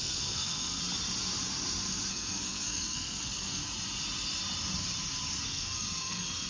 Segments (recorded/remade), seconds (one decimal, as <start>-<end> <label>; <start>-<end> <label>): 0.0-0.8 remade; 0.8-2.1 recorded; 2.1-3.6 remade; 3.6-5.4 recorded; 5.4-6.5 remade